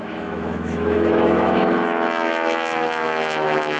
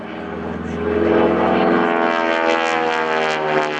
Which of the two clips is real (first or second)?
second